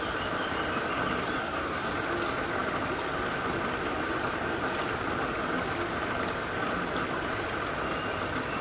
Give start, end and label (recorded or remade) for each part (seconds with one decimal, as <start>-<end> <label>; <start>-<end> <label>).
0.0-1.4 recorded; 1.4-1.9 remade; 1.9-8.6 recorded